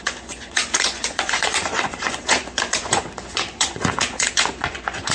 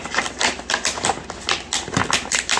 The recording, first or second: second